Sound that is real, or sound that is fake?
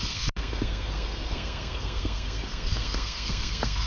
fake